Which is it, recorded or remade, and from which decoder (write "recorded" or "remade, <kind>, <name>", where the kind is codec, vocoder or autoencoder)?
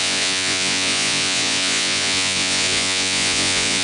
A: remade, vocoder, Vocos